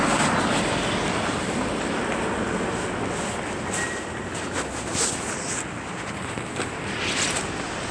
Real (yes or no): yes